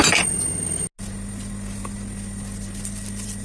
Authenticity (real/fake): real